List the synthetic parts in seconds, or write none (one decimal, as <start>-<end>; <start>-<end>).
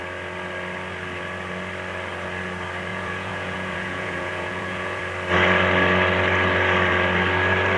2.9-5.0